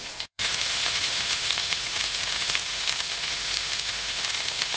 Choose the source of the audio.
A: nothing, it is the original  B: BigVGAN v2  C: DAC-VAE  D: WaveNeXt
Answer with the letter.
C